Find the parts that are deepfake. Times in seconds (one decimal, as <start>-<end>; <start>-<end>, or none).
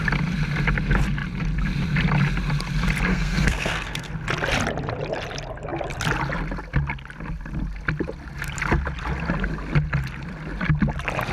3.1-4.1